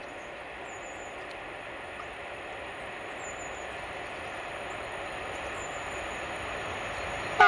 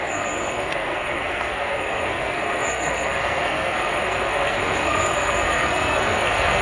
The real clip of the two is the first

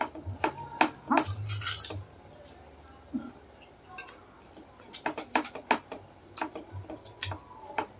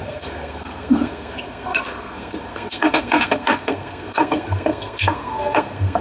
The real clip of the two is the first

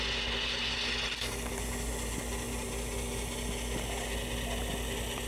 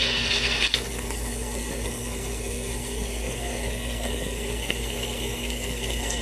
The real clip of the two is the first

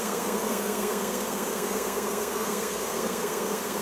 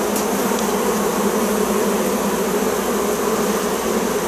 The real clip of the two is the second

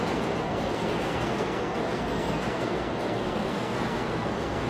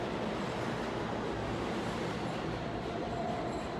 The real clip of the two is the second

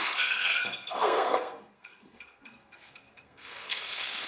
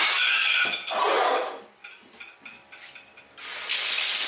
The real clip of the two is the second